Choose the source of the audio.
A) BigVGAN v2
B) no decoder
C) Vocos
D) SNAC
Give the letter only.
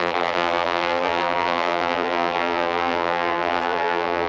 A